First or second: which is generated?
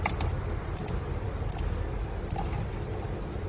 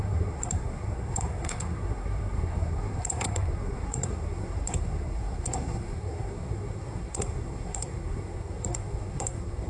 second